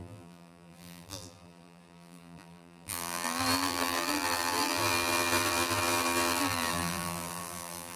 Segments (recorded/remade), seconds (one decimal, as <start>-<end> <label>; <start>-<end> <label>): 0.0-8.0 remade